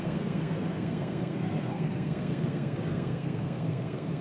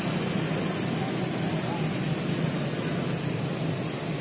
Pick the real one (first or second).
second